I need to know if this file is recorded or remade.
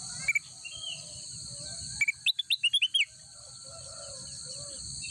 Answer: remade